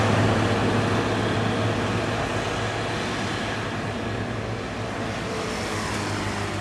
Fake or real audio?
real